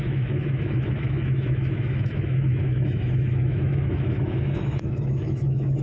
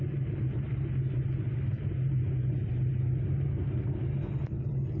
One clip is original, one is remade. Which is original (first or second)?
second